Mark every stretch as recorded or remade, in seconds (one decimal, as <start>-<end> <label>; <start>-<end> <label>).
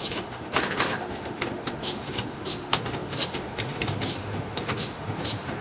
0.0-5.6 remade